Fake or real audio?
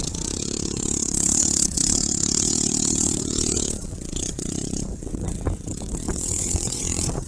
fake